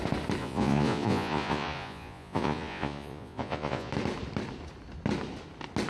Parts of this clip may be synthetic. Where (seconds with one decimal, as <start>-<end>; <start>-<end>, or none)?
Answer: 0.4-3.9